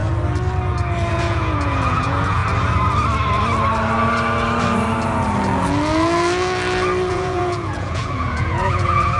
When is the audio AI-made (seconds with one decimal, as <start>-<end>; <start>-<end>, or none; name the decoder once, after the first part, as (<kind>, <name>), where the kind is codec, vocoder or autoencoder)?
1.1-2.4 (vocoder, Vocos); 7.1-9.2